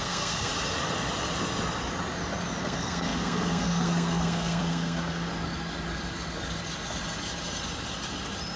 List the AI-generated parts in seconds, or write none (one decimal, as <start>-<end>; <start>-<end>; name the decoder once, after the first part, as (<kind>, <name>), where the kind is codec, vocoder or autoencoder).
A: 0.0-0.5 (codec, SNAC); 2.6-5.3

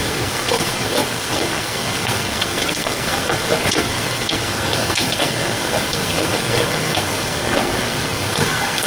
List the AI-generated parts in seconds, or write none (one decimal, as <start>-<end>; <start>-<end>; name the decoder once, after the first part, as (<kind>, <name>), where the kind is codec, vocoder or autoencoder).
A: 0.0-8.9 (codec, SNAC)

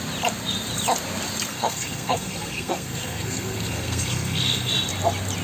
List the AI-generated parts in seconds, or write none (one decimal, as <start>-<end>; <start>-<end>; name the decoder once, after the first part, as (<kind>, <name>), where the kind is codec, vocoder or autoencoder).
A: 1.5-4.7 (codec, SNAC)

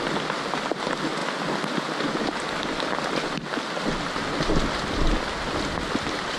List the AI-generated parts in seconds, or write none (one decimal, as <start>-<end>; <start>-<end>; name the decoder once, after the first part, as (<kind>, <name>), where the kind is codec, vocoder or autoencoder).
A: none

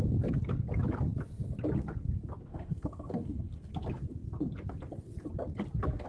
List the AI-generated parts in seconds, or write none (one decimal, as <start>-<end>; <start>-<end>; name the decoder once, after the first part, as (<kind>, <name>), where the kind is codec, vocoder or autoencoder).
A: 2.5-3.7 (codec, SNAC)

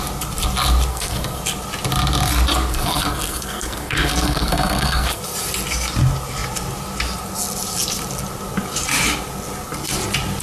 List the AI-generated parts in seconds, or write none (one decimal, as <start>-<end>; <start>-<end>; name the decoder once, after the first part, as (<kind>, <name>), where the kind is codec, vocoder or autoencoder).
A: 0.9-1.4 (codec, SNAC); 2.7-5.2

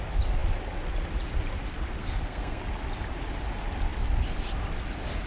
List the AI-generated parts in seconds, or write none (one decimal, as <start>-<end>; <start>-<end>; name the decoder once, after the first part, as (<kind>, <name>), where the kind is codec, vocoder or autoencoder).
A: 2.0-2.6 (codec, SNAC)

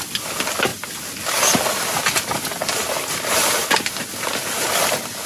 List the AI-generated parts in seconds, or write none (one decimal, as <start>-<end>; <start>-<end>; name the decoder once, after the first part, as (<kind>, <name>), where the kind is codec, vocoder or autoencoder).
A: none